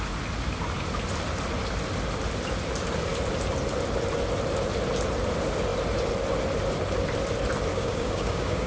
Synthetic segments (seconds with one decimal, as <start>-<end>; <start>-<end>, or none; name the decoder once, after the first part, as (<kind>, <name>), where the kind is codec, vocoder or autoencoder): 7.7-8.7 (codec, DAC)